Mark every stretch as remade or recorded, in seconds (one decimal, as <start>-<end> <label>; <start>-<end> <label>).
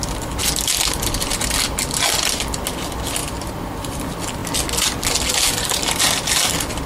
0.0-3.2 recorded; 3.2-4.0 remade; 4.0-6.9 recorded